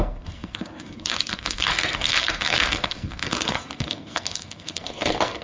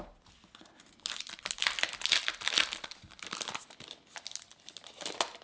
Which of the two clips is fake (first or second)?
first